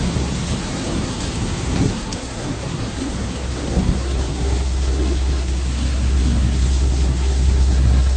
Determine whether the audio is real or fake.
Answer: fake